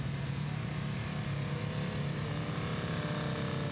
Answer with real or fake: real